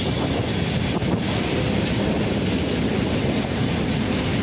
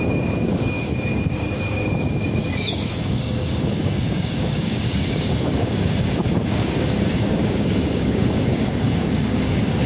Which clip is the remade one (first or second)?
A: second